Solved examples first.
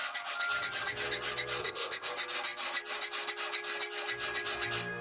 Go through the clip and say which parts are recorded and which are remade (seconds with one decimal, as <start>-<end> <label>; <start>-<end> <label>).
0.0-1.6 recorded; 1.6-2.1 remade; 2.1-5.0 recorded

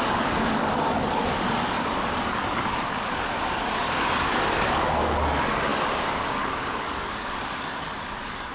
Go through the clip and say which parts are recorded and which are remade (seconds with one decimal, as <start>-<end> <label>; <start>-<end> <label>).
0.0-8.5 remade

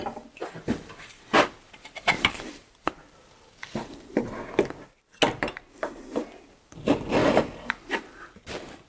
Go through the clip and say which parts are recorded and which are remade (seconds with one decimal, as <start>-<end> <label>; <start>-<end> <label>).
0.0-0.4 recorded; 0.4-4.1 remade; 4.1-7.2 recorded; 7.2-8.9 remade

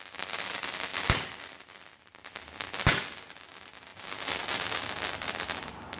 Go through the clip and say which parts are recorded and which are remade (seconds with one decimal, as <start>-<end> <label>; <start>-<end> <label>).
0.0-6.0 recorded